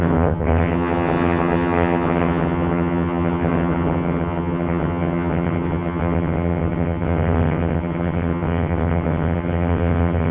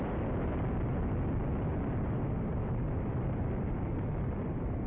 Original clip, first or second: second